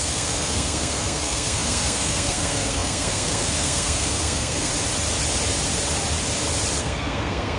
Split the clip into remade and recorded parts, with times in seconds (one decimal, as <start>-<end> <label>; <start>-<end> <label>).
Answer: 0.0-4.7 remade; 4.7-6.8 recorded; 6.8-7.6 remade